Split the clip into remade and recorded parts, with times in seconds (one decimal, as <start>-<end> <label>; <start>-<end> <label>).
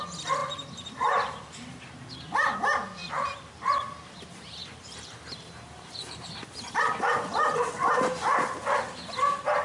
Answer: 0.0-0.4 recorded; 0.4-2.1 remade; 2.1-3.0 recorded; 3.0-3.5 remade; 3.5-4.6 recorded; 4.6-6.9 remade; 6.9-9.6 recorded